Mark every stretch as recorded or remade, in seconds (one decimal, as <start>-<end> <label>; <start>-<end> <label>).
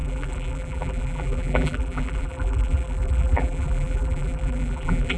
0.0-5.2 remade